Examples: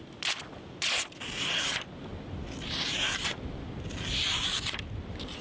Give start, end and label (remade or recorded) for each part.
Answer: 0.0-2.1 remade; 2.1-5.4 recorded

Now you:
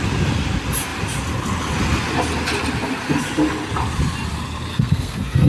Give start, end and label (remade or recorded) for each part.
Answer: 0.0-4.7 recorded; 4.7-5.5 remade

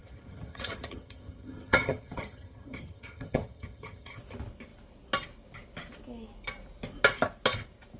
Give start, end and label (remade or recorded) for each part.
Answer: 0.0-4.2 remade; 4.2-8.0 recorded

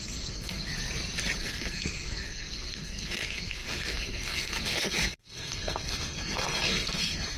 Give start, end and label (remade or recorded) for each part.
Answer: 0.0-0.7 remade; 0.7-1.4 recorded; 1.4-7.4 remade

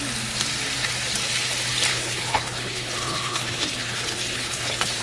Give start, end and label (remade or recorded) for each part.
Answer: 0.0-1.9 recorded; 1.9-5.0 remade

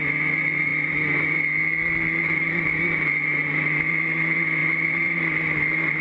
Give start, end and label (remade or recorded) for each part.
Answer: 0.0-4.6 recorded; 4.6-5.2 remade; 5.2-6.0 recorded